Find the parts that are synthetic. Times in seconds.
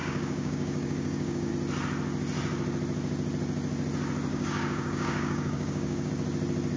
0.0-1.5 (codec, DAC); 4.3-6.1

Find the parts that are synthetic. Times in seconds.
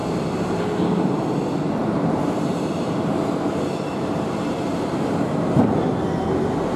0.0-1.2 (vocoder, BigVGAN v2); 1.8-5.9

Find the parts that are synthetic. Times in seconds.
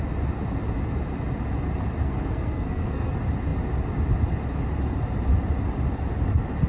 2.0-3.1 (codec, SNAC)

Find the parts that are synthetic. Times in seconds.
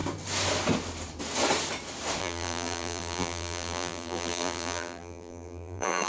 2.2-6.1 (vocoder, BigVGAN v2)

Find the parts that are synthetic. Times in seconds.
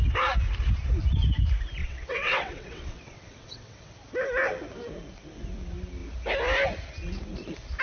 1.8-3.9 (vocoder, WaveNeXt)